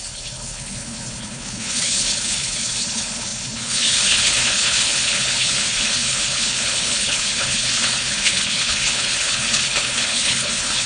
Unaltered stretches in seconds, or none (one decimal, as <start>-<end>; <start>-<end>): none

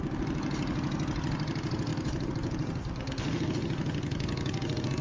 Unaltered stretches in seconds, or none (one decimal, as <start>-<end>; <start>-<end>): 0.0-1.9; 3.2-5.0

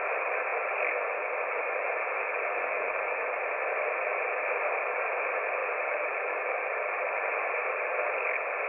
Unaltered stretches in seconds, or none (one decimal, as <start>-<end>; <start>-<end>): 0.0-5.6; 6.3-8.7

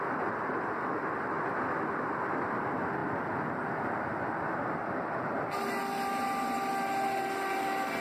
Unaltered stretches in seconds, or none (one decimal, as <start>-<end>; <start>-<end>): 0.0-8.0